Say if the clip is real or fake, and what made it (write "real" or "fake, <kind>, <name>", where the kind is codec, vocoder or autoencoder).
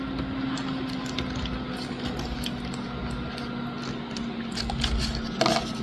real